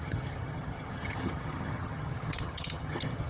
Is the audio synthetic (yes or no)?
yes